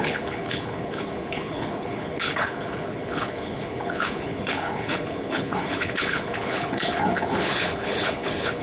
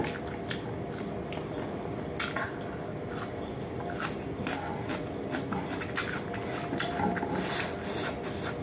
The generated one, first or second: first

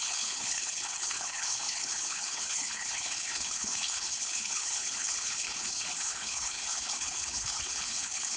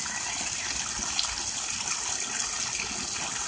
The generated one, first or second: first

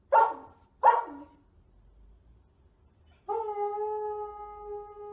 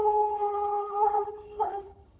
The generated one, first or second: second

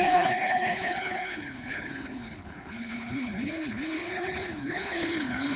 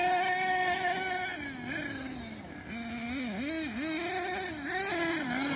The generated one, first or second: first